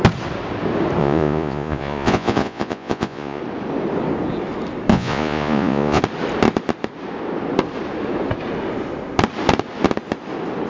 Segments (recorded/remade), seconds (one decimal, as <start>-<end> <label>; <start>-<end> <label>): 0.0-1.0 recorded; 1.0-3.4 remade; 3.4-4.9 recorded; 4.9-6.0 remade; 6.0-10.7 recorded